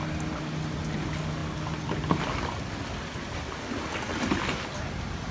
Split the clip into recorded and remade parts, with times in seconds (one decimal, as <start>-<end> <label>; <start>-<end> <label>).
0.0-5.3 recorded